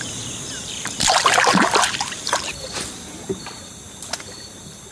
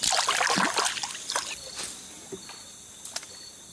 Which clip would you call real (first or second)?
second